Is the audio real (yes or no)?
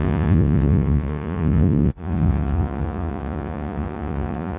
no